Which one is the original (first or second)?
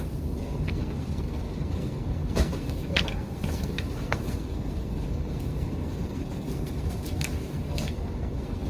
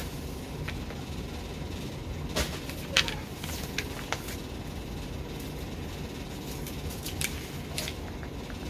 second